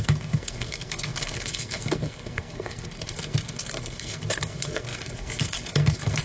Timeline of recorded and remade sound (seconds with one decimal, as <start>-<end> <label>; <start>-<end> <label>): 0.0-6.2 remade